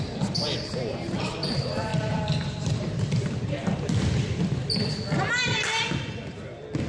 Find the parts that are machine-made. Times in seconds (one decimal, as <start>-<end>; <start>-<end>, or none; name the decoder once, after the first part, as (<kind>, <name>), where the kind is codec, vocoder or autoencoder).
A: 0.0-6.9 (vocoder, BigVGAN v2)